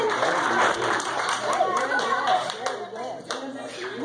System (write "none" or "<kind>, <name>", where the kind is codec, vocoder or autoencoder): vocoder, BigVGAN v2